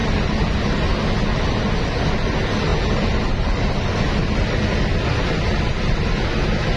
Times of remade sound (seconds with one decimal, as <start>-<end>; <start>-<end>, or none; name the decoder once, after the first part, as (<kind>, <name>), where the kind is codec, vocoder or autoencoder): none